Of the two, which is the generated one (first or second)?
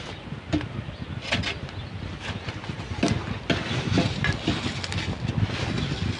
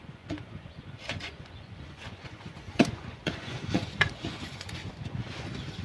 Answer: second